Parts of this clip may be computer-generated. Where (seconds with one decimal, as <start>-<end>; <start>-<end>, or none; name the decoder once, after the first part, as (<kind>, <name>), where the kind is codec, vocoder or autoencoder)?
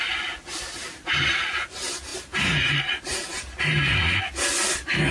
none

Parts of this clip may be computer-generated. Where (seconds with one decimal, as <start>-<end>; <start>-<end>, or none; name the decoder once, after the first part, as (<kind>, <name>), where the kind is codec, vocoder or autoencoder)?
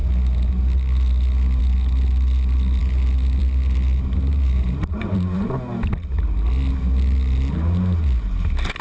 4.3-5.5 (vocoder, BigVGAN v2)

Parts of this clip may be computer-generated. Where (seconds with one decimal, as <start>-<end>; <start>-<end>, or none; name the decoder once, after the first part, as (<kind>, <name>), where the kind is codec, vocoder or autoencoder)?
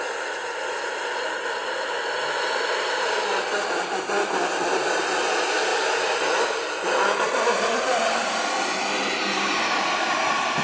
none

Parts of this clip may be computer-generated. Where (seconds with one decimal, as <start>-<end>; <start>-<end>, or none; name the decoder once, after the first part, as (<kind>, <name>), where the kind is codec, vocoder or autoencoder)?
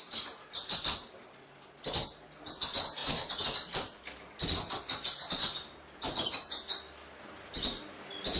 none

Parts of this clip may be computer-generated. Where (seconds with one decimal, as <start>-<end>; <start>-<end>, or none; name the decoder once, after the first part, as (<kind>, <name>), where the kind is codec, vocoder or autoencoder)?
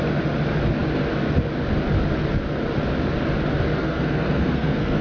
3.8-5.0 (codec, SNAC)